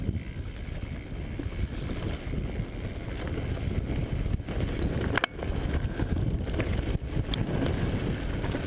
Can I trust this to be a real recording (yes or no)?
yes